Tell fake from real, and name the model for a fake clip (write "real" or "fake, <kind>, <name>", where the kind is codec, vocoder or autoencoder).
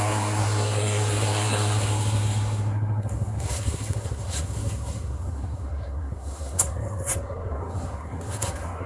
fake, codec, SNAC